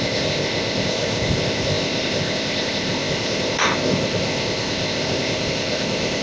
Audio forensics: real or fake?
fake